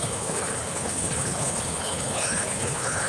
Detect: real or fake fake